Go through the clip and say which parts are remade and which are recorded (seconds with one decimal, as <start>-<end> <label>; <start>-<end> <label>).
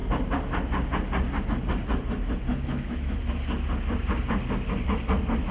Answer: 0.0-2.5 recorded; 2.5-3.2 remade; 3.2-5.5 recorded